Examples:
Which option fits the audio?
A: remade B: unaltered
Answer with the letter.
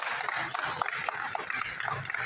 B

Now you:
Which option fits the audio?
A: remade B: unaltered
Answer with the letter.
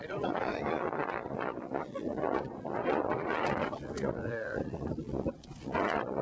A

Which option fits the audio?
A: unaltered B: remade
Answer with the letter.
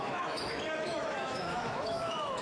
B